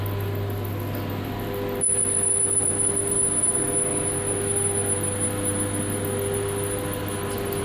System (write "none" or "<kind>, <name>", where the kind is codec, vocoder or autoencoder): none